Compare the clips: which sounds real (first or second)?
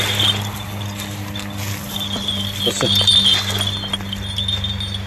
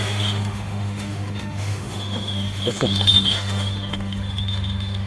first